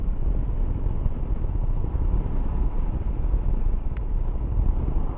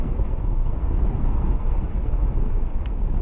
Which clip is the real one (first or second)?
first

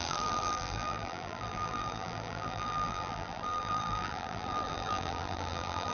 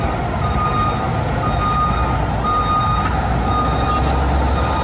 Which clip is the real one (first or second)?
second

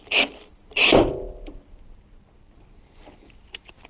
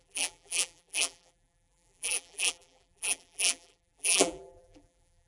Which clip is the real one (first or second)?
first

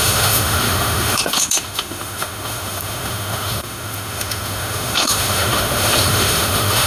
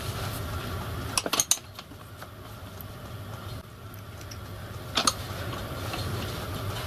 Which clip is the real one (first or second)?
second